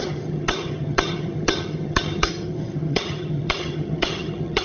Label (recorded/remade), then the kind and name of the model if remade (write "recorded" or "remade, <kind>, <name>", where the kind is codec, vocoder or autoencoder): remade, vocoder, HiFi-GAN